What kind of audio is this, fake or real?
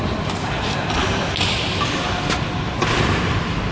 real